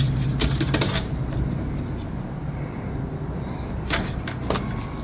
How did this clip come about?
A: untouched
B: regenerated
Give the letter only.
A